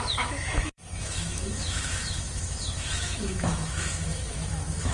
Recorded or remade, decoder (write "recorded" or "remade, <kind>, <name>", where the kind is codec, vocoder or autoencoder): remade, autoencoder, DAC-VAE